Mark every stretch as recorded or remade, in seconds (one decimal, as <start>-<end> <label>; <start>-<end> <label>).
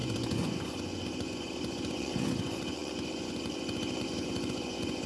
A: 0.0-5.1 remade